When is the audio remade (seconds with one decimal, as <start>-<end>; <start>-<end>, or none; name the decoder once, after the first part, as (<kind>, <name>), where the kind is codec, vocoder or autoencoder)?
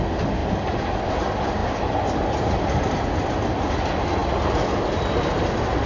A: none